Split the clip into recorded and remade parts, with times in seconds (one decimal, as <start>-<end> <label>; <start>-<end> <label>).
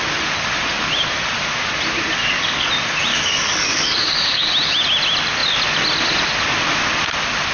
0.0-2.2 recorded; 2.2-2.7 remade; 2.7-3.1 recorded; 3.1-4.5 remade; 4.5-7.5 recorded